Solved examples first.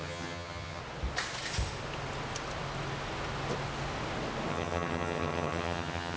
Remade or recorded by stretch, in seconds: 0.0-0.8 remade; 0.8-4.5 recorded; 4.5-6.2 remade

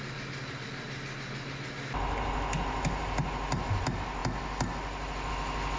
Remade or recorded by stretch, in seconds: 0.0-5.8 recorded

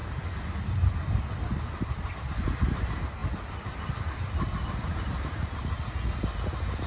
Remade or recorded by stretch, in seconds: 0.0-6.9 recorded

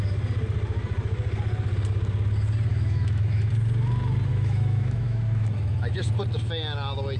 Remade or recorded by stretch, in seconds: 0.0-2.7 recorded; 2.7-3.5 remade; 3.5-4.3 recorded; 4.3-6.1 remade; 6.1-7.2 recorded

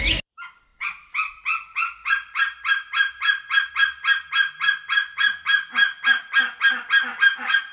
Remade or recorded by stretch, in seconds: 0.0-7.7 recorded

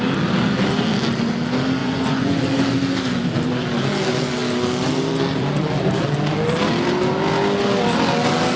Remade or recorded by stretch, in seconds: 0.0-1.8 recorded; 1.8-2.4 remade; 2.4-8.6 recorded

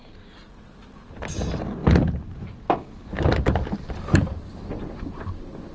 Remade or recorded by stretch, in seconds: 0.0-5.7 recorded

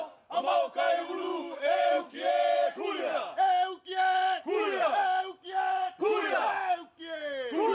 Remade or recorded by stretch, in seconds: 0.0-1.3 recorded; 1.3-2.3 remade; 2.3-7.7 recorded